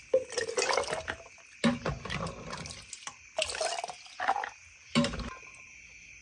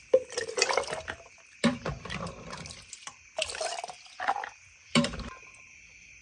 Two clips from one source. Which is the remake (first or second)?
second